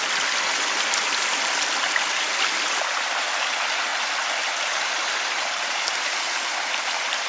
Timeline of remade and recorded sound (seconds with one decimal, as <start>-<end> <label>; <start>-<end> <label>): 0.0-7.3 recorded